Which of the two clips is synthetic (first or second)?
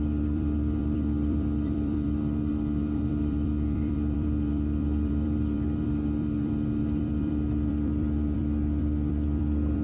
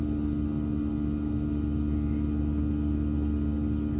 first